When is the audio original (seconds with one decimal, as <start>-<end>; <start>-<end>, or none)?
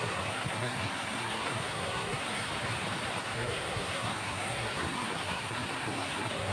2.5-3.2